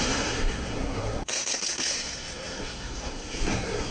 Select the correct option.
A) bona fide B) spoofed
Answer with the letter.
B